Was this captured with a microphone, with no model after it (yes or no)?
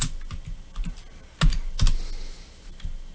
yes